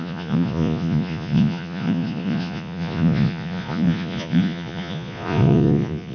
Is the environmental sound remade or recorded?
remade